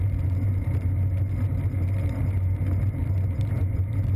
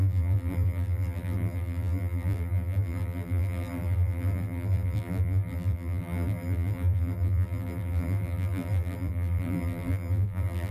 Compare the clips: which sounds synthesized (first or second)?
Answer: second